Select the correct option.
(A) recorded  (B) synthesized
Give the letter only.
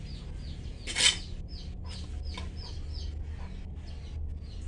A